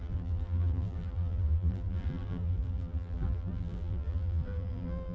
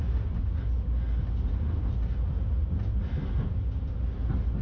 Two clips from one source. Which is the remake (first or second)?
first